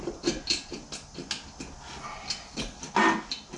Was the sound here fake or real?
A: real